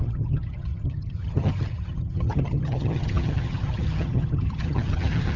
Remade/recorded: remade